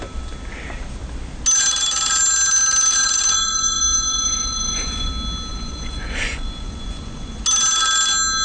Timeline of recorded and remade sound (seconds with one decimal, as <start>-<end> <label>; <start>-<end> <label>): 0.0-3.0 recorded; 3.0-5.1 remade; 5.1-5.5 recorded; 5.5-7.4 remade; 7.4-8.4 recorded